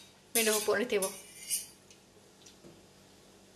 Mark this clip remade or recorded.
recorded